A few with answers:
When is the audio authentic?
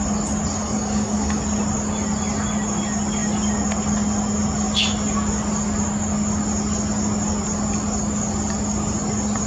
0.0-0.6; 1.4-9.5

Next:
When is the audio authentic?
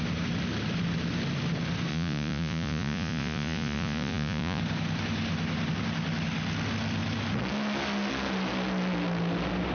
0.0-1.9; 4.6-9.7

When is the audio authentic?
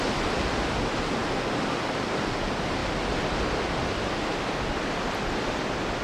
0.0-6.0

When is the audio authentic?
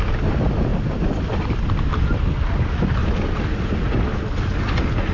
0.0-5.1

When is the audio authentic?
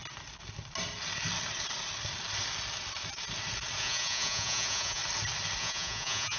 0.0-3.8; 5.0-5.6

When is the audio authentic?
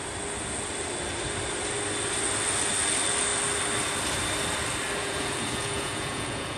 0.0-5.0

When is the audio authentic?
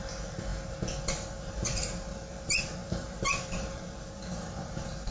0.5-1.0